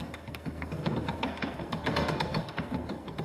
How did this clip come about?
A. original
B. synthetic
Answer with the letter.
B